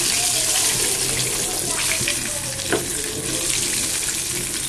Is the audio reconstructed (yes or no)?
no